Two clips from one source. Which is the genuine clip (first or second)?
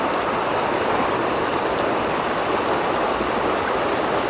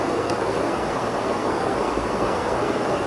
first